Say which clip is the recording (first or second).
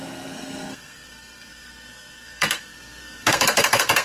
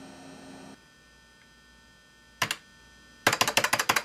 second